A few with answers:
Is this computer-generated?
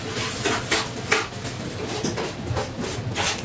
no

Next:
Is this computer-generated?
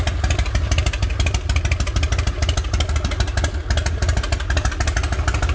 no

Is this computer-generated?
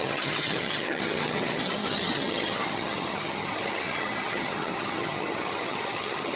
yes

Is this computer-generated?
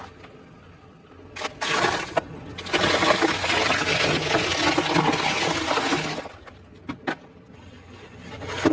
no